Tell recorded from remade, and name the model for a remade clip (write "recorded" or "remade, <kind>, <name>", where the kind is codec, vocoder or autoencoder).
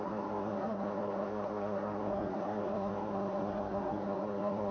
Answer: remade, codec, SNAC